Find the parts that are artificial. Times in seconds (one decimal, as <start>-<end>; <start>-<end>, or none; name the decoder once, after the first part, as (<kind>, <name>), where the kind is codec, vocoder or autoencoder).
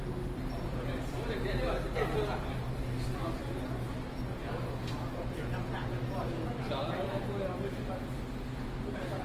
none